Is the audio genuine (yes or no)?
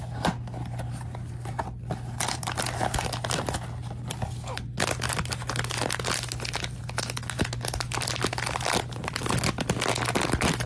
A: yes